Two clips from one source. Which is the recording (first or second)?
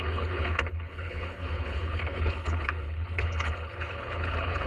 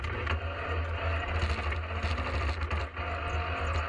second